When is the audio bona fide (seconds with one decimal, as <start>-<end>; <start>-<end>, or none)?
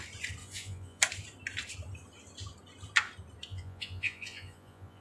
0.0-0.4; 1.0-3.5